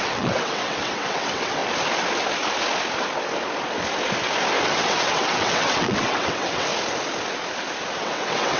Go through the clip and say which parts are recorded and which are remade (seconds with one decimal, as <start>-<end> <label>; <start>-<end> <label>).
0.0-1.6 remade; 1.6-4.6 recorded; 4.6-6.7 remade; 6.7-8.0 recorded; 8.0-8.6 remade